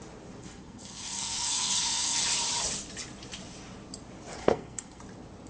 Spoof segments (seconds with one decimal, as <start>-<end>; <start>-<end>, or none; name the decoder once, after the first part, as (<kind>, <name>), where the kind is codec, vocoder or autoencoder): 0.4-2.2 (codec, SNAC); 4.4-5.0